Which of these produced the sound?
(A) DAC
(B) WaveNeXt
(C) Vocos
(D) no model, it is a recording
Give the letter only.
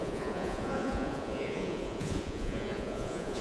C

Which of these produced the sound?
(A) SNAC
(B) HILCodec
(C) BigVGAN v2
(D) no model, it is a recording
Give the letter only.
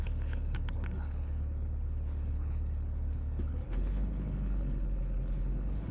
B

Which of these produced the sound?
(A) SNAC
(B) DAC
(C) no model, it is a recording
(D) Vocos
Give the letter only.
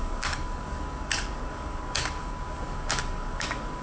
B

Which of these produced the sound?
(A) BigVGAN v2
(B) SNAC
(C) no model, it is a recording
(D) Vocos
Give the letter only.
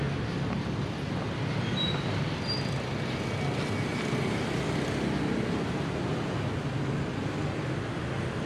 C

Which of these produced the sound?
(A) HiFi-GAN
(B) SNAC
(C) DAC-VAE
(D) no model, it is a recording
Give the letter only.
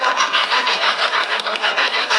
B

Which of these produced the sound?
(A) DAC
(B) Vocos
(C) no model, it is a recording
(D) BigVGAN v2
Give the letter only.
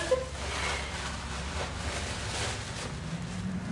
C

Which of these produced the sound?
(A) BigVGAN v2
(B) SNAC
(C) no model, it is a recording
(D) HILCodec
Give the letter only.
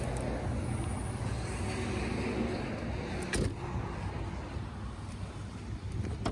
C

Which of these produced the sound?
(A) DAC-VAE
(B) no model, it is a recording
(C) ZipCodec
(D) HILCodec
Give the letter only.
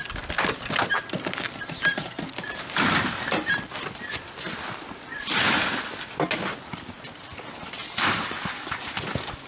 B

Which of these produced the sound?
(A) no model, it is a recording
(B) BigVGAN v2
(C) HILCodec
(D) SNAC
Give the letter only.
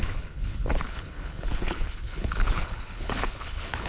C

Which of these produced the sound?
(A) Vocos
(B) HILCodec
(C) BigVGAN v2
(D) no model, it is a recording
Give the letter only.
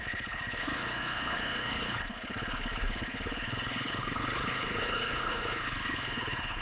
B